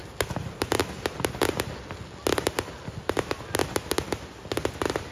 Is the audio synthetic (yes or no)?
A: no